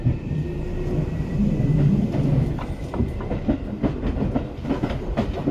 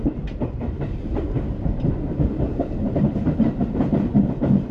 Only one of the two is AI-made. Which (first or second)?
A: second